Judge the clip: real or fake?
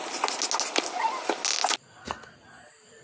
real